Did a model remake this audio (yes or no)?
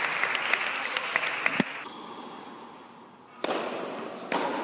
no